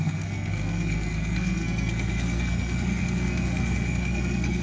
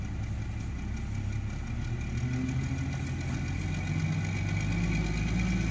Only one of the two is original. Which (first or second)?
second